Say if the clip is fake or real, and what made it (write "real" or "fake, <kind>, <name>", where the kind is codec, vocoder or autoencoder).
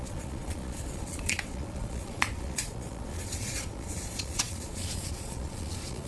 fake, vocoder, Vocos